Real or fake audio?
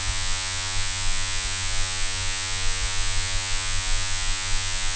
fake